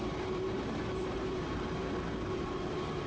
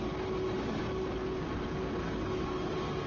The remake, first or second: first